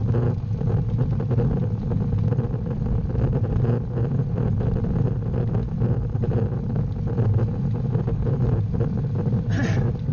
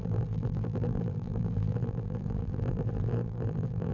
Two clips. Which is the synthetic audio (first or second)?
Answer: second